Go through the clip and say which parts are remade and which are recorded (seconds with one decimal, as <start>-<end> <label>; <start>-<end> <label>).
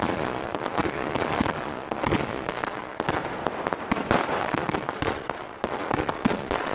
0.0-3.2 remade; 3.2-4.4 recorded; 4.4-6.7 remade